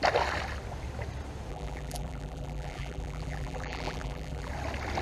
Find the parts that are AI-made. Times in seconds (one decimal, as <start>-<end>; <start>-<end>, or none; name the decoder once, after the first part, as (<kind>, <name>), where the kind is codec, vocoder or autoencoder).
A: 1.5-4.5 (vocoder, BigVGAN v2)

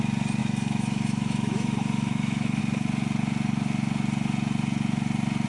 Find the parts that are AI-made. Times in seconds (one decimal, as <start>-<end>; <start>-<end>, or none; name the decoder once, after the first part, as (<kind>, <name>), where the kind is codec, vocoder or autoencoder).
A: 0.4-2.6 (autoencoder, DAC-VAE)

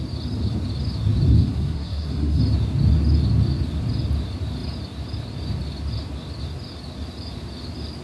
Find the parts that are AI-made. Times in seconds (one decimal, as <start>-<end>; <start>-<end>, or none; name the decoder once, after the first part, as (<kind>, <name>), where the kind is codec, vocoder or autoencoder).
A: 1.4-2.4 (codec, SNAC)

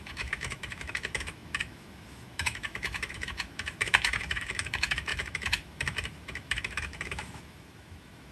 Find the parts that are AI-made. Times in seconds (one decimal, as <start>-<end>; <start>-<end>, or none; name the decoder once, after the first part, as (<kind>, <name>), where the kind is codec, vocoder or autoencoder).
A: 0.0-8.3 (autoencoder, DAC-VAE)

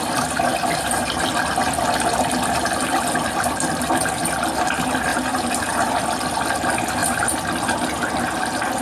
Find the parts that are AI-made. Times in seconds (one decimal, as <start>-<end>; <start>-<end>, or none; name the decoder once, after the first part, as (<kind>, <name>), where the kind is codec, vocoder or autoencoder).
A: 0.5-1.2 (vocoder, BigVGAN v2); 5.1-5.9

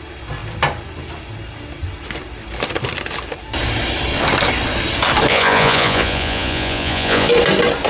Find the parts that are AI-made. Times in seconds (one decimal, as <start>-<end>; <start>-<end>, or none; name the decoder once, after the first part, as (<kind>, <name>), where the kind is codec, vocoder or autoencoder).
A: 5.3-7.3 (vocoder, Vocos)

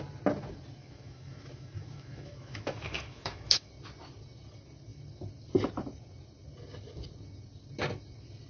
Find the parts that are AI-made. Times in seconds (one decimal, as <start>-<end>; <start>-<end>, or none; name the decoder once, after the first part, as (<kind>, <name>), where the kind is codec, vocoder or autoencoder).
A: 0.8-3.7 (autoencoder, DAC-VAE)